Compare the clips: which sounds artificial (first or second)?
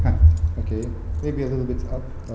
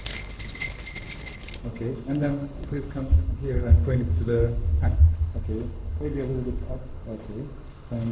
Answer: second